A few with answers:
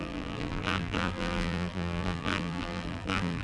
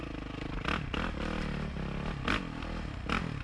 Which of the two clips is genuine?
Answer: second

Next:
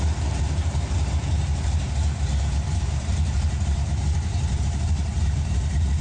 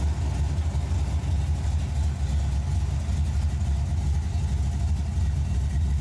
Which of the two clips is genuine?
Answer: second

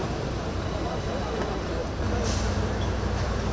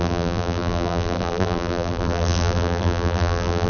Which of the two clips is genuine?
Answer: first